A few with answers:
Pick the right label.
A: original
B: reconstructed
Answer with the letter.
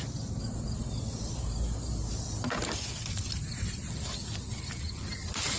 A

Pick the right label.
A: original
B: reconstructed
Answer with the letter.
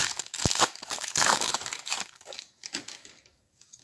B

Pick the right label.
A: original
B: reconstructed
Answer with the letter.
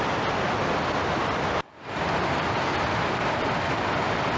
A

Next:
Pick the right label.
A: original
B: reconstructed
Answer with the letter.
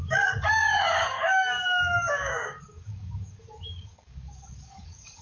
B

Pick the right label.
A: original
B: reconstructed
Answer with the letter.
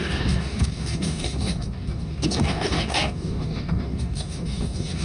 B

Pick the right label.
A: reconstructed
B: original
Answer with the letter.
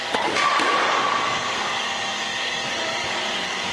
A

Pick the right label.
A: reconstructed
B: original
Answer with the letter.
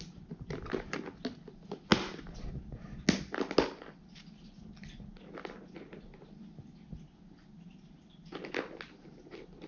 B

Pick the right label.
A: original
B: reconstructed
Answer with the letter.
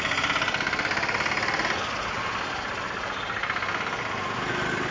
A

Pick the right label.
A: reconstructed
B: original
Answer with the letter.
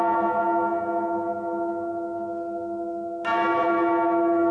B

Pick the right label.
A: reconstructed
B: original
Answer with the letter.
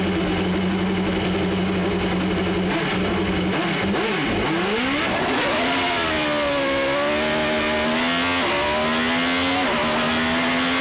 B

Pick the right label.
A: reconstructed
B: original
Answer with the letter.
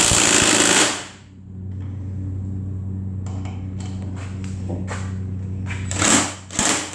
B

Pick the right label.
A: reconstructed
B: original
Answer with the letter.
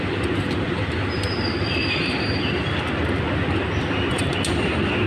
B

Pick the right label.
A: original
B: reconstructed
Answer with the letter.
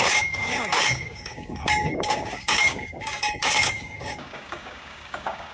B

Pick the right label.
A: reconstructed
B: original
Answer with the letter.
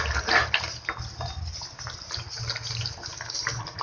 B